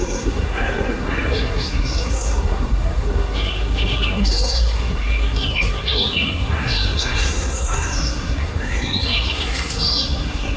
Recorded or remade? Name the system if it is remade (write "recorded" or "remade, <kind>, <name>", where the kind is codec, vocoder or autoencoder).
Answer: remade, codec, SNAC